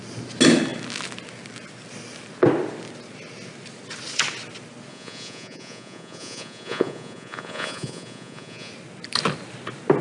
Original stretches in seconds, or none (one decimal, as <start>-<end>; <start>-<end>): 0.0-4.9; 8.7-10.0